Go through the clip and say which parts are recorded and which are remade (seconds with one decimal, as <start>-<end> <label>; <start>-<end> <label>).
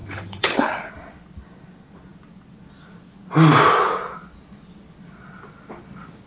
0.0-0.9 remade; 0.9-6.3 recorded